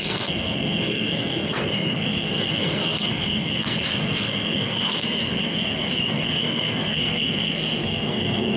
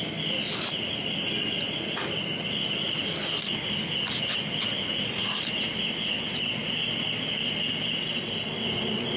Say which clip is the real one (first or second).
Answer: second